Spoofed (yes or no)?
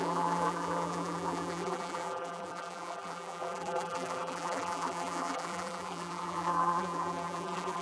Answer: yes